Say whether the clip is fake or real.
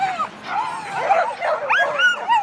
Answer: real